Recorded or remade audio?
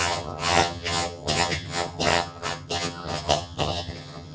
remade